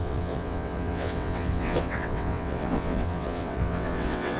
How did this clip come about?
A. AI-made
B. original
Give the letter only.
A